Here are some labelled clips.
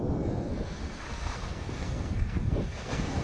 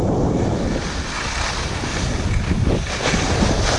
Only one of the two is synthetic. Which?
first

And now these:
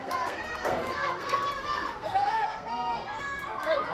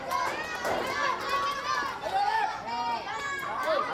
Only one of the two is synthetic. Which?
first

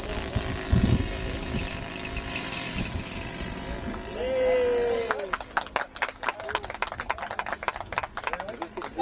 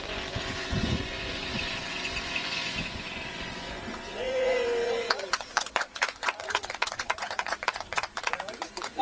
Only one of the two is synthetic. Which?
second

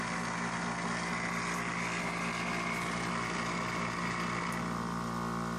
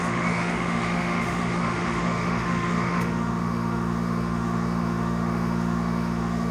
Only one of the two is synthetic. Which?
second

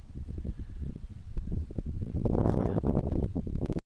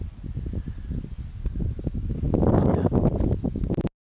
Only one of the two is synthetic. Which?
first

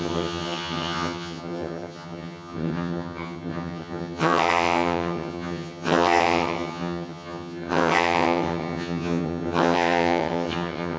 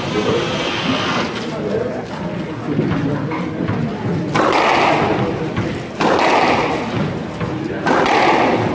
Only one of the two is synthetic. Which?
first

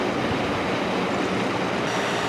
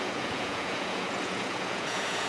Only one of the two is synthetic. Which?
second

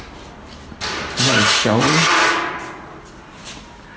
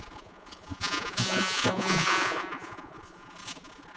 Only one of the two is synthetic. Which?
second